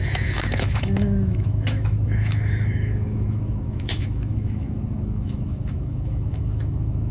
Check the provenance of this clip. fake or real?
fake